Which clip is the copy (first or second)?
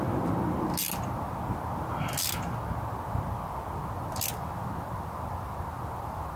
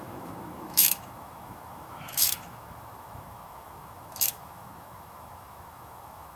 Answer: second